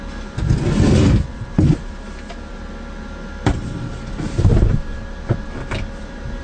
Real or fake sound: real